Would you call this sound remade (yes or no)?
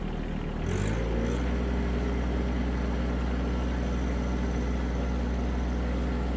no